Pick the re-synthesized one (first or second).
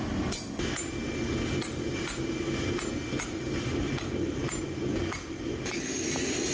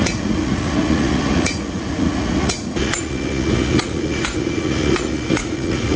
second